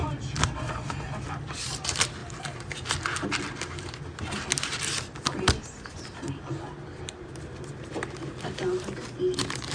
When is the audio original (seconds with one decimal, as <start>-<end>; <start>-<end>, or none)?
0.0-9.7